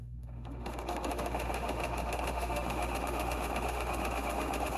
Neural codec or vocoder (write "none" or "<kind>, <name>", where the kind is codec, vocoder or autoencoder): autoencoder, DAC-VAE